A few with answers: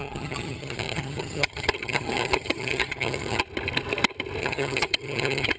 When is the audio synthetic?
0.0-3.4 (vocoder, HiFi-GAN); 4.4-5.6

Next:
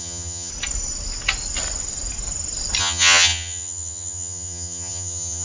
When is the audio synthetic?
0.0-0.5 (vocoder, HiFi-GAN); 2.8-5.4

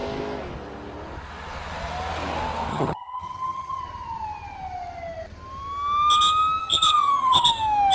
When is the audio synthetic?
2.7-3.8 (vocoder, HiFi-GAN); 6.6-7.5

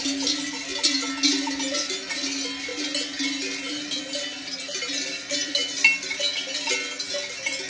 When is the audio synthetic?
none

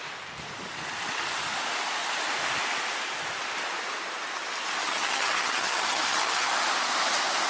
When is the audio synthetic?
4.8-6.5 (vocoder, HiFi-GAN)

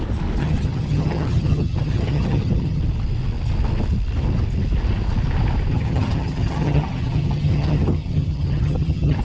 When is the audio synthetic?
0.4-2.8 (vocoder, HiFi-GAN); 5.7-9.2